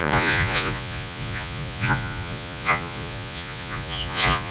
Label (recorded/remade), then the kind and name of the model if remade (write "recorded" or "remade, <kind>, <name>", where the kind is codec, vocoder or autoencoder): remade, vocoder, Vocos